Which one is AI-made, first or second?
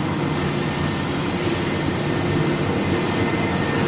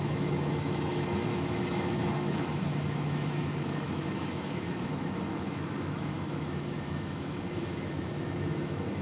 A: second